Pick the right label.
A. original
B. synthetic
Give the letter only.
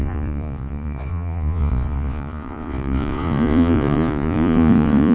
B